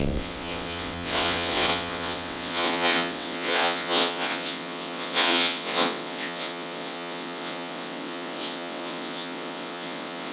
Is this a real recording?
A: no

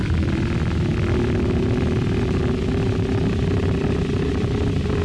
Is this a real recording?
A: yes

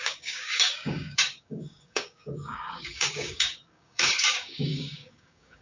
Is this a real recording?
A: no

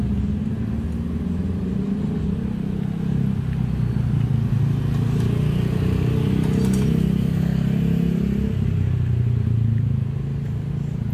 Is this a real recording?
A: yes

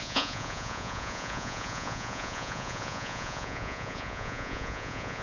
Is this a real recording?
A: no